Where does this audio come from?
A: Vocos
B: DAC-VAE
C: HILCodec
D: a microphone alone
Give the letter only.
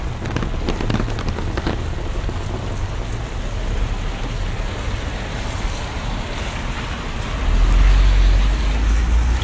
D